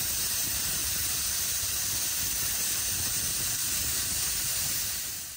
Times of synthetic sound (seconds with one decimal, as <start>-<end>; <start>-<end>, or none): 0.8-4.0